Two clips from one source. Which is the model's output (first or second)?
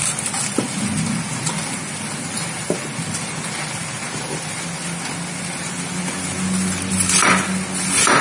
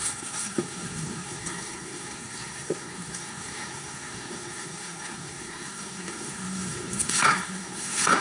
second